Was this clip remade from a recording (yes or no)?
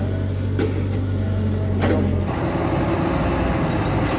no